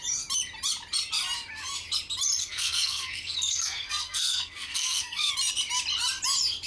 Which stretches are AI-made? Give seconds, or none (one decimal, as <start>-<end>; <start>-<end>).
2.4-5.3

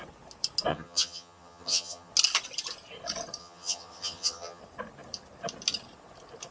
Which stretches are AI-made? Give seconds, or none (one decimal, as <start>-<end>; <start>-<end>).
0.7-2.1; 3.4-4.6

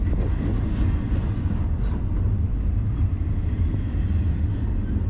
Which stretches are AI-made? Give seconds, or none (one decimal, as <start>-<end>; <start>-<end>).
0.5-2.0

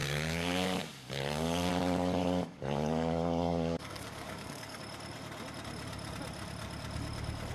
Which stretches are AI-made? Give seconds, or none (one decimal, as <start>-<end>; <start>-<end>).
0.0-1.7; 2.2-4.8

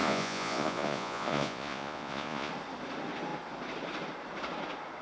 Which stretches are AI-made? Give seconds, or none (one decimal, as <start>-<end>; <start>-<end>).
0.0-2.5

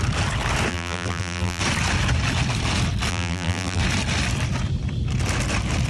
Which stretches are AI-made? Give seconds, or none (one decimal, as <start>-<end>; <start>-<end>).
0.7-1.6; 3.1-3.8

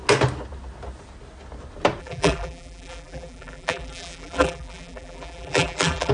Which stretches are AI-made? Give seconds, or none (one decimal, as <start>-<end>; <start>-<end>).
2.0-6.1

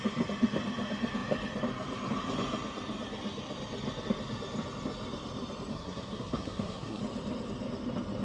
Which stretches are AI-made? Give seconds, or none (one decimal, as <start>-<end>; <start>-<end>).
5.7-7.0